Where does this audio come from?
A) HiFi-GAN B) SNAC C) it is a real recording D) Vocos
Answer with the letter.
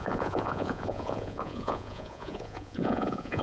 D